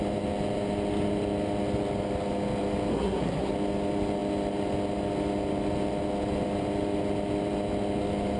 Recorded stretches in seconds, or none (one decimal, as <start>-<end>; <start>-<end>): 0.0-2.9; 3.5-8.4